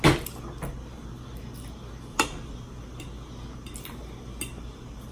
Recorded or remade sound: recorded